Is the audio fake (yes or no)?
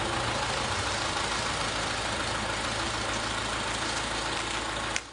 no